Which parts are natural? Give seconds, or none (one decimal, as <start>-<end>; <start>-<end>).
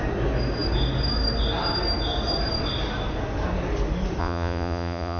0.0-4.2